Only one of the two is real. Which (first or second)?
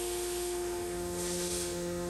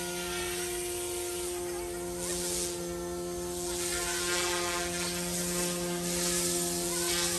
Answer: second